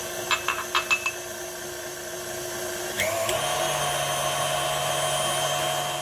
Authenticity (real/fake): real